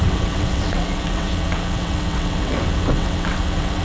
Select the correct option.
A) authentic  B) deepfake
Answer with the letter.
B